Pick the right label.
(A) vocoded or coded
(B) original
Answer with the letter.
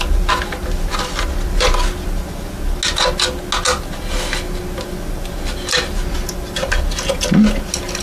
B